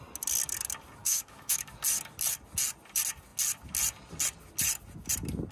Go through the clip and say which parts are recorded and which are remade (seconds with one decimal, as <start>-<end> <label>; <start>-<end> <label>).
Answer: 0.0-1.0 recorded; 1.0-1.7 remade; 1.7-5.5 recorded